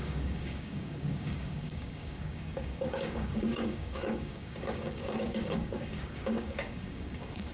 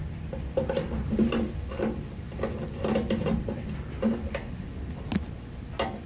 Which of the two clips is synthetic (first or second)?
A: first